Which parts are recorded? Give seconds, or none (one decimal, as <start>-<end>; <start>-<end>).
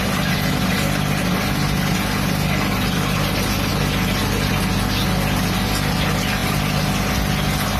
0.0-7.8